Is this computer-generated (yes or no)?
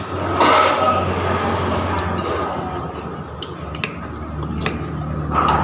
no